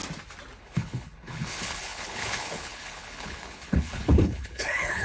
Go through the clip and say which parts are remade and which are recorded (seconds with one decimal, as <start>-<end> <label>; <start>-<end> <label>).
0.0-0.6 recorded; 0.6-5.0 remade